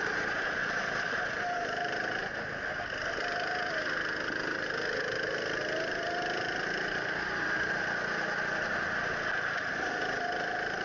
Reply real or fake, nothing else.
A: real